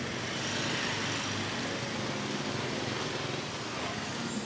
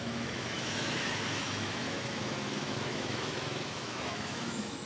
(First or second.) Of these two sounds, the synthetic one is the second